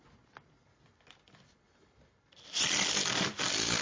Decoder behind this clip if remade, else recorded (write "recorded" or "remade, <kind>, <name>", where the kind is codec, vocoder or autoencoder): recorded